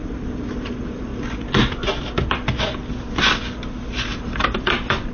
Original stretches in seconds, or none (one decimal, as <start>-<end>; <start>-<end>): 1.1-4.2